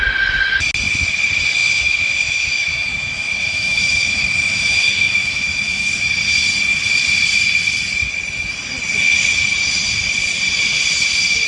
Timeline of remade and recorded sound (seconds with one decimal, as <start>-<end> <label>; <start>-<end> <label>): 0.0-1.6 recorded; 1.6-5.9 remade; 5.9-11.5 recorded